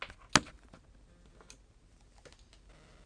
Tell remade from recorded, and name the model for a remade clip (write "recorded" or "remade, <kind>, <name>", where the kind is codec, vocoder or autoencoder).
recorded